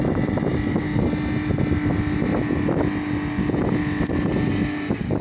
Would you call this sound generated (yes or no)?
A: no